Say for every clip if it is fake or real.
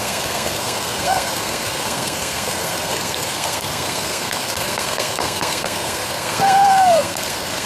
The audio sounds fake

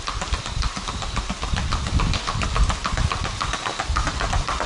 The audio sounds fake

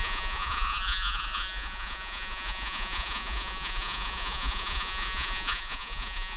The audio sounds fake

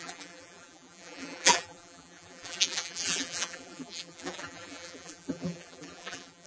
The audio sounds fake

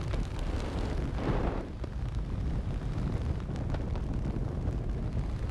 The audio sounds real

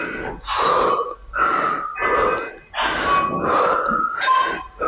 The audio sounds real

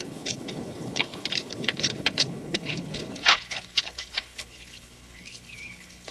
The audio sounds fake